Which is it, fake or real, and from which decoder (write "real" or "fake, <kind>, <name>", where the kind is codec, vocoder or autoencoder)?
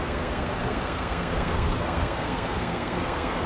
fake, codec, SNAC